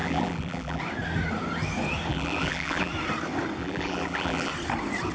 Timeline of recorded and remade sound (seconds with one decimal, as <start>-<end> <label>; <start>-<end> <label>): 0.0-0.8 remade; 0.8-2.1 recorded; 2.1-2.9 remade; 2.9-3.6 recorded; 3.6-4.5 remade; 4.5-5.1 recorded